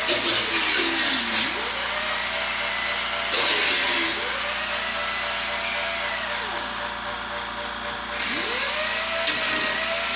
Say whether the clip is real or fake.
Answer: real